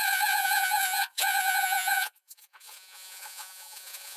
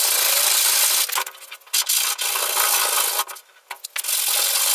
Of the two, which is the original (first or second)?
second